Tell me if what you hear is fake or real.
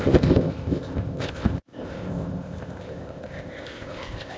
fake